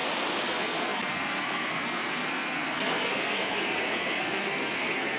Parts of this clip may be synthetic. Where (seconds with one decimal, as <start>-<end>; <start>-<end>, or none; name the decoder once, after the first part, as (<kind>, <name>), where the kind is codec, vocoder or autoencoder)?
0.5-5.2 (codec, SNAC)